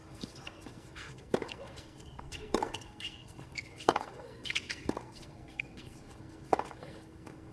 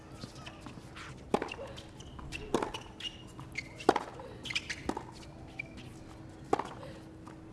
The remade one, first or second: first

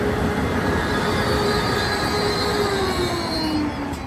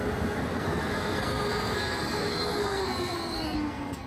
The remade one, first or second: second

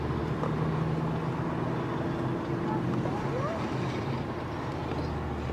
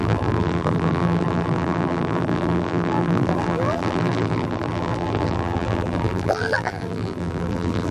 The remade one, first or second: second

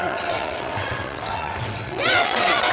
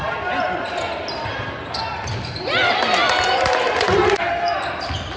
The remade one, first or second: first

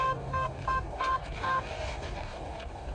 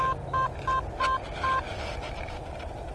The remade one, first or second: first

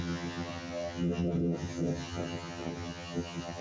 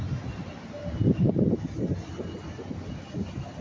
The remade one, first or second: first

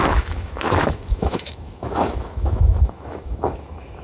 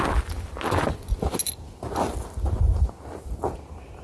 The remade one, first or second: first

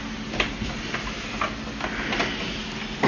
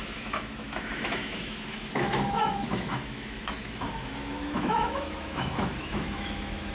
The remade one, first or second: second